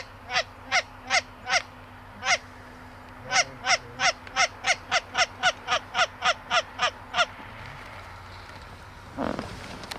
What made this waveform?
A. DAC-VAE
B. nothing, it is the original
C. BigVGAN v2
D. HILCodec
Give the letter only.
B